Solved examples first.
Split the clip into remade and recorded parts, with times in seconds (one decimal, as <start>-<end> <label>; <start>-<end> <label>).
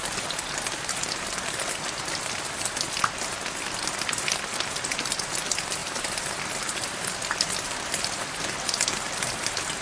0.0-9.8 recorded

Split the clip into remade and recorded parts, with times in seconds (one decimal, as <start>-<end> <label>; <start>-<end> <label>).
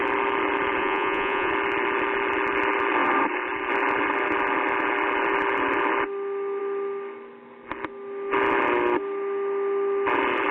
0.0-0.8 recorded; 0.8-1.5 remade; 1.5-10.5 recorded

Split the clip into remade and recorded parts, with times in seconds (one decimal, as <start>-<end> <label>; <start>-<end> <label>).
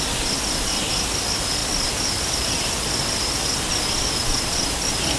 0.0-5.2 recorded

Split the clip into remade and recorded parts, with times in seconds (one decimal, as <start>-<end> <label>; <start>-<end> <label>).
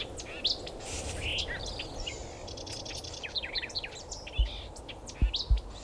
0.0-5.8 recorded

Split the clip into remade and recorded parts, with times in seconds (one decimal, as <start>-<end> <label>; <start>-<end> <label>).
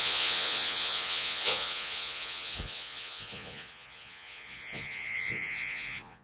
0.0-6.2 remade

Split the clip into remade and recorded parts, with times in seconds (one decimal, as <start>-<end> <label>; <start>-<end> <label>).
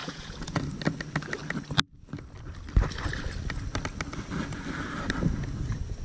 0.0-0.6 remade; 0.6-6.0 recorded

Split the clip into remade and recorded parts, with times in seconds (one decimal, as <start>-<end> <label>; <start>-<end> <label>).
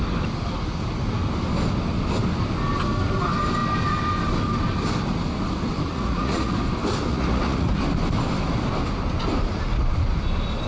0.0-5.9 recorded; 5.9-6.5 remade; 6.5-7.1 recorded; 7.1-7.8 remade; 7.8-10.7 recorded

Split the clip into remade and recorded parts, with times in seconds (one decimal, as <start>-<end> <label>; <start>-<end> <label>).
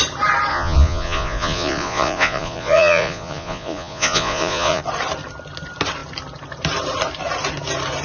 0.0-0.5 recorded; 0.5-4.8 remade; 4.8-8.0 recorded